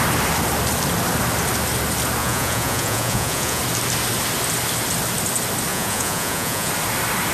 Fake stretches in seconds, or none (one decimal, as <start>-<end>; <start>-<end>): 2.2-3.6; 5.7-6.7